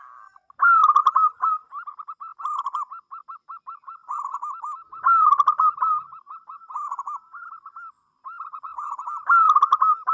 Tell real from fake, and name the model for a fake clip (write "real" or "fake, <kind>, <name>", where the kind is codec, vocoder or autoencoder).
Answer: real